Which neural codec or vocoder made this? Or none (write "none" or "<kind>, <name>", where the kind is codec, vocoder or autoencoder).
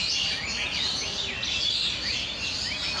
none